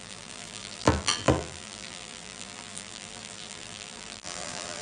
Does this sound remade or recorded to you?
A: remade